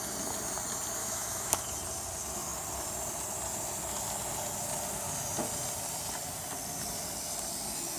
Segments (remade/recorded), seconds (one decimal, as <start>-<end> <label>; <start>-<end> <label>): 0.0-1.0 recorded; 1.0-1.6 remade; 1.6-8.0 recorded